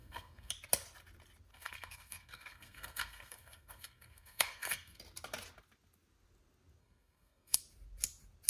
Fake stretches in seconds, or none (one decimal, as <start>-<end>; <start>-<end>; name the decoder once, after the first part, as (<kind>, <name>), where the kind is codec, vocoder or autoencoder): 0.0-0.5 (codec, SNAC); 1.5-5.0; 6.8-7.6